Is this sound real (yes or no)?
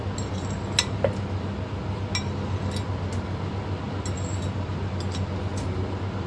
yes